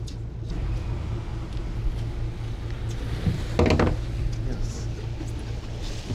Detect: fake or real real